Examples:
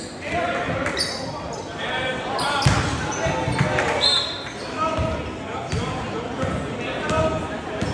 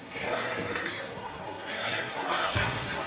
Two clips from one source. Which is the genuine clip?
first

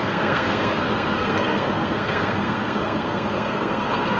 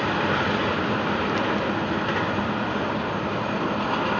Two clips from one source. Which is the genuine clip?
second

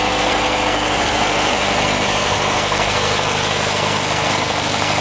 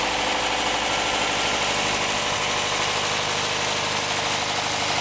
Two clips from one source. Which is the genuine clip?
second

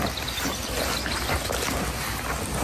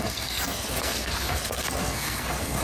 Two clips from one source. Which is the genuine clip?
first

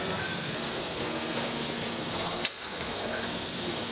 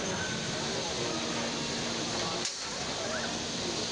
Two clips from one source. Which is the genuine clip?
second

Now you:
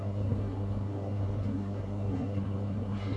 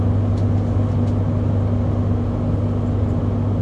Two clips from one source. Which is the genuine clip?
second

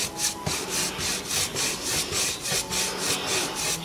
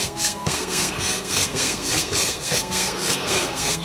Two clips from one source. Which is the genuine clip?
first